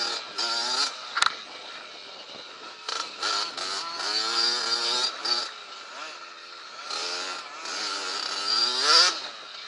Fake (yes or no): no